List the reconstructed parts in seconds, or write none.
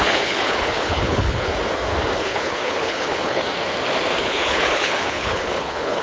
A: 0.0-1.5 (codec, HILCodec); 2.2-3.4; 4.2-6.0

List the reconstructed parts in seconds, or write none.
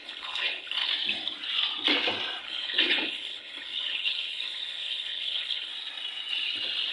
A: 0.0-0.9 (codec, HILCodec); 2.4-5.7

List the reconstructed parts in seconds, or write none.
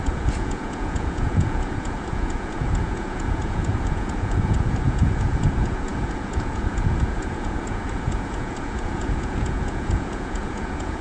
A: 0.0-11.0 (vocoder, Vocos)